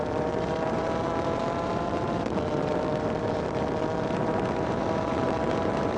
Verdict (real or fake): fake